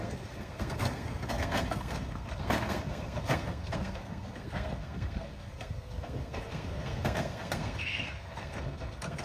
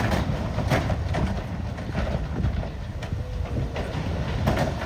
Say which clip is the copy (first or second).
first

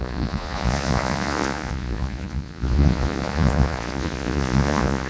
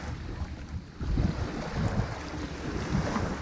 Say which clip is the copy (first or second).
first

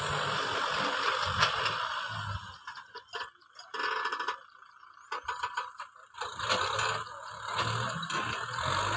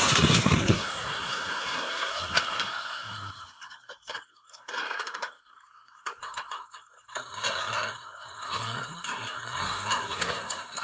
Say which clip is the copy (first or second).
second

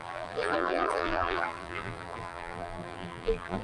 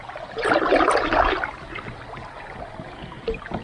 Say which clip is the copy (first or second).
first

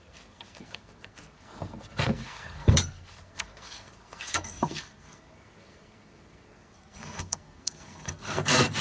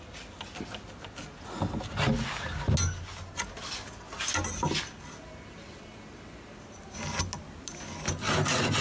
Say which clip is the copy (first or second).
first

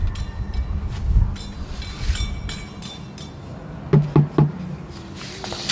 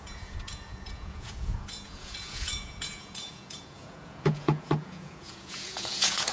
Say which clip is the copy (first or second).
second